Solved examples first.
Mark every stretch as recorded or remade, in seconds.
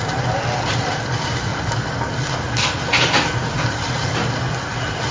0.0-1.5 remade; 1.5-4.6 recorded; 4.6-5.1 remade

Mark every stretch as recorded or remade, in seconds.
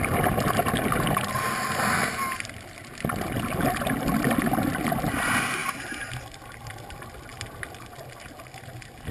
0.0-9.1 recorded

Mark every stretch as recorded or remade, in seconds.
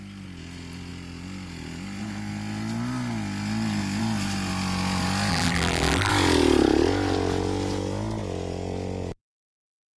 0.0-5.3 recorded; 5.3-6.1 remade; 6.1-10.0 recorded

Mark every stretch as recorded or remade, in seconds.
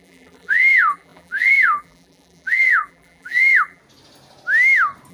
0.0-3.8 remade; 3.8-5.1 recorded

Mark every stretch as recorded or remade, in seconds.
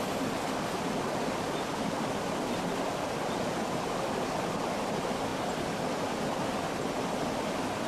0.0-7.9 recorded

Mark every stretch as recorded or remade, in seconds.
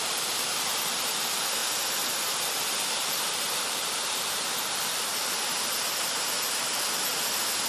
0.0-1.6 remade; 1.6-2.8 recorded; 2.8-7.7 remade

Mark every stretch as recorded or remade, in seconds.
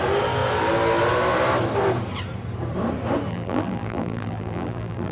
0.0-3.3 recorded; 3.3-5.1 remade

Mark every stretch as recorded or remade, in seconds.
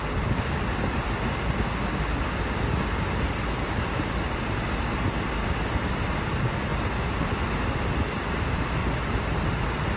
0.0-8.8 recorded; 8.8-9.6 remade; 9.6-10.0 recorded